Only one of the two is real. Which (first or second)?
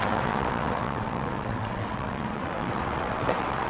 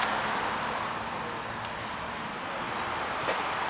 second